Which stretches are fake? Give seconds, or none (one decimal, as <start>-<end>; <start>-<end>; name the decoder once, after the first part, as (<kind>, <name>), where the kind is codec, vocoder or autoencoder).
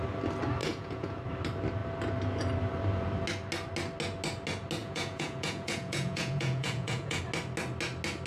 0.6-1.2 (vocoder, Vocos); 4.8-7.2